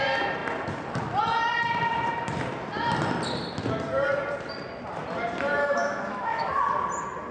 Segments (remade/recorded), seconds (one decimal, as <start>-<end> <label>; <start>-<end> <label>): 0.0-5.6 recorded; 5.6-6.5 remade; 6.5-7.3 recorded